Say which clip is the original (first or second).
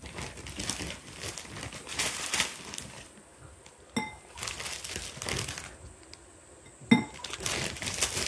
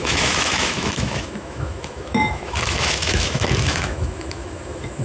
first